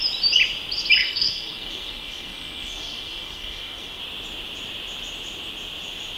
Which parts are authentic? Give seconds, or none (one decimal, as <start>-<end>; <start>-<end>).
0.0-1.0; 4.0-6.2